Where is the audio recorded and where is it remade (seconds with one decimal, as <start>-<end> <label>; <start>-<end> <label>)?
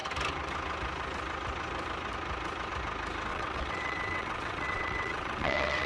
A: 0.0-3.3 recorded; 3.3-5.9 remade